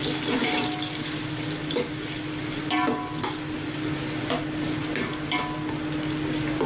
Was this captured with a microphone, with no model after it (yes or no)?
yes